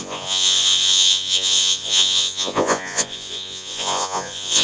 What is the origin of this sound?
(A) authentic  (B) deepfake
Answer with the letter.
B